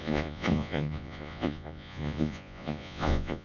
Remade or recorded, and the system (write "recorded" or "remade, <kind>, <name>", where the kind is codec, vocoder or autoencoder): remade, vocoder, Vocos